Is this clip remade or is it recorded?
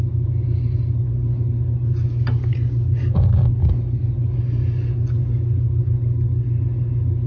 recorded